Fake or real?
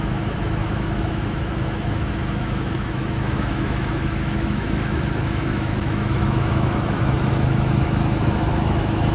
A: fake